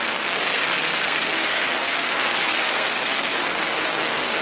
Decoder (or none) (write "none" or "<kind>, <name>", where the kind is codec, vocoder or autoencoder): codec, SNAC